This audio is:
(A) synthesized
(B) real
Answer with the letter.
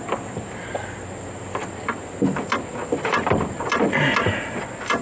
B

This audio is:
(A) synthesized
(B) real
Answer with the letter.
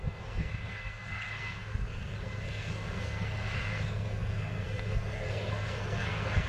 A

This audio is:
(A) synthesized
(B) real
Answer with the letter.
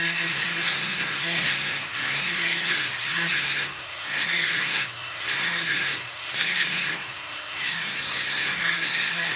A